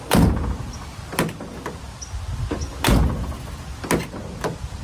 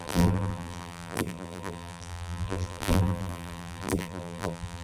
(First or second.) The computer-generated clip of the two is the second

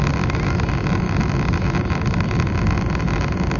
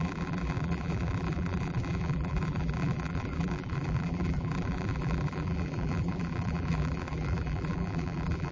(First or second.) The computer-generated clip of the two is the second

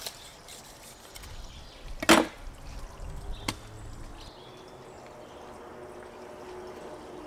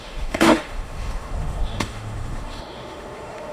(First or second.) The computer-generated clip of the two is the second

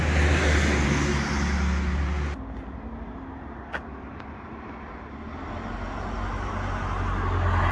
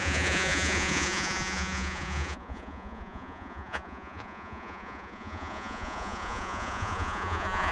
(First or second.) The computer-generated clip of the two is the second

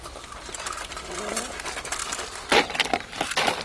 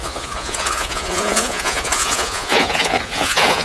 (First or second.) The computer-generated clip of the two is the second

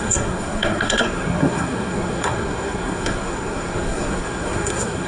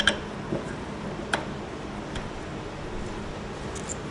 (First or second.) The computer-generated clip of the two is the first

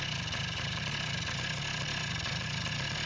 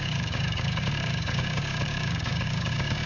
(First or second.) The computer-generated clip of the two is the second